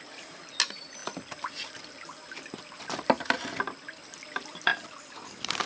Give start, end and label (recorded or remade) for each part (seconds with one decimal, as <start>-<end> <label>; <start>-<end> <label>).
0.0-5.7 recorded